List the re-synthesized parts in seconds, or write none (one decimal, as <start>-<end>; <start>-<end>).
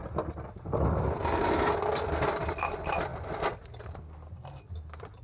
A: none